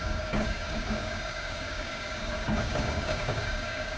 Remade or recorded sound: remade